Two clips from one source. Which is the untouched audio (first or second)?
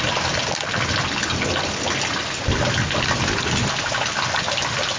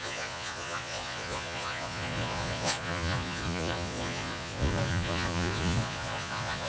first